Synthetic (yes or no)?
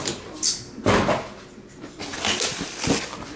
no